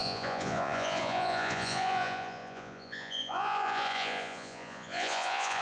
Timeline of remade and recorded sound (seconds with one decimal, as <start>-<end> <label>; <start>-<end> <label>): 0.0-5.6 remade